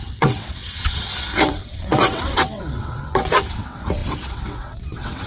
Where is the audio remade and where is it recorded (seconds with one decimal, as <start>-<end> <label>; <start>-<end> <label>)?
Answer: 0.0-5.3 remade